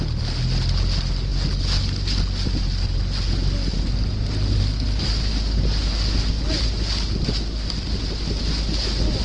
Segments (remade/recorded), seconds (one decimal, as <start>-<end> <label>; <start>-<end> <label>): 0.0-9.2 recorded